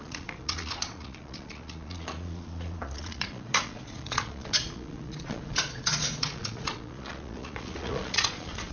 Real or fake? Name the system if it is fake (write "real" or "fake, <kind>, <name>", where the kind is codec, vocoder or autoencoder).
fake, vocoder, Vocos